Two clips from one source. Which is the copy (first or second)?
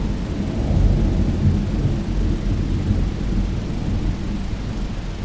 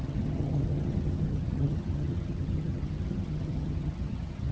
second